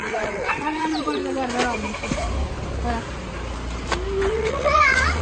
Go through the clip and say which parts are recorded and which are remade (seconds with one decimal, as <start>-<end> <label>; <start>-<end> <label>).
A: 0.0-1.2 remade; 1.2-4.3 recorded; 4.3-5.2 remade